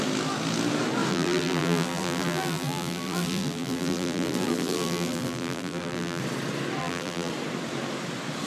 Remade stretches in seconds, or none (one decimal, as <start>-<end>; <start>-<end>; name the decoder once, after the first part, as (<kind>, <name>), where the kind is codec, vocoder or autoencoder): 1.1-6.2 (vocoder, BigVGAN v2); 6.8-7.3

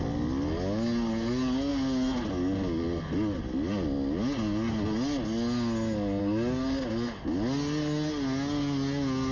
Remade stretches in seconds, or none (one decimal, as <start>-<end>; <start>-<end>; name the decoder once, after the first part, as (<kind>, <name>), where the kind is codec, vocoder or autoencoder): none